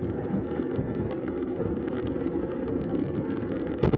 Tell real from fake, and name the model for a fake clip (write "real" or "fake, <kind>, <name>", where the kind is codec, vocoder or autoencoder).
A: fake, codec, SNAC